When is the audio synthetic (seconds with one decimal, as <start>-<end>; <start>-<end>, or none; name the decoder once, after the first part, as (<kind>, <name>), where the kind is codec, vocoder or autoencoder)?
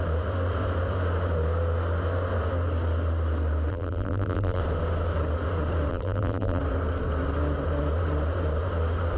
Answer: 3.7-4.6 (vocoder, BigVGAN v2); 5.9-6.6